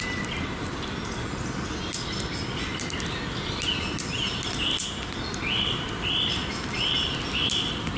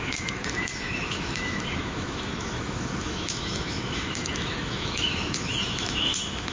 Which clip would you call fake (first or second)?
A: second